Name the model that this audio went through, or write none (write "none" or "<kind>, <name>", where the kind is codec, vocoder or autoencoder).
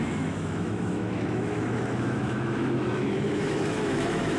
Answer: autoencoder, DAC-VAE